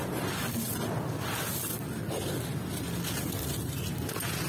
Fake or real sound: real